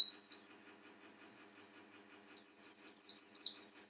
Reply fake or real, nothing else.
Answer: real